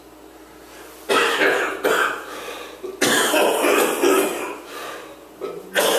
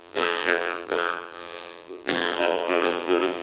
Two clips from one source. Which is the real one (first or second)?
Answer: first